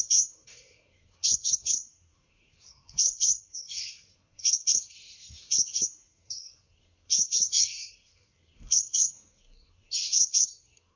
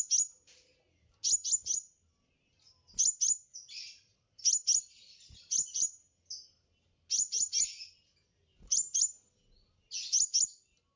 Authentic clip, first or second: second